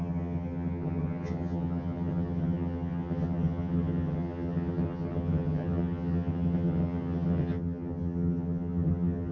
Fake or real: fake